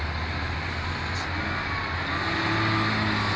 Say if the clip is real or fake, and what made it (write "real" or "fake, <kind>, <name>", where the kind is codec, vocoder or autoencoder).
real